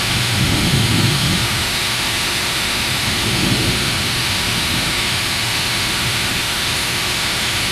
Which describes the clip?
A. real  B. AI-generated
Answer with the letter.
B